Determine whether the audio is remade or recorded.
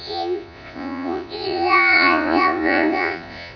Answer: remade